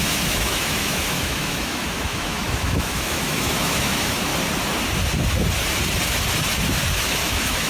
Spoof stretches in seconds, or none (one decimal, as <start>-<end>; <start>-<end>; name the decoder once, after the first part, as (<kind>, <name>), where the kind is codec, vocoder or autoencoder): 0.0-4.3 (autoencoder, DAC-VAE); 6.9-7.7